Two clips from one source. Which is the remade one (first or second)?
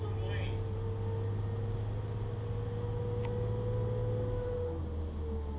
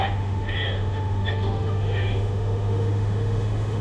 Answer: second